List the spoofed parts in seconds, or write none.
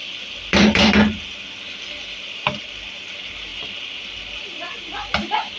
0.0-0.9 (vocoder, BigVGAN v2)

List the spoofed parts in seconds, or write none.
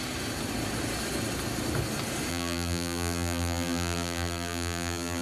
2.3-5.2 (vocoder, BigVGAN v2)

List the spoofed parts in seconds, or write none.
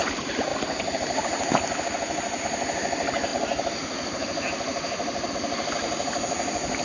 3.3-5.3 (vocoder, BigVGAN v2)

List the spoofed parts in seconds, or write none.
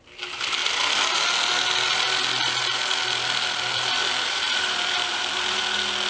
4.0-5.6 (vocoder, BigVGAN v2)